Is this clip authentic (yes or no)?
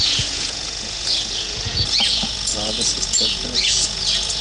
no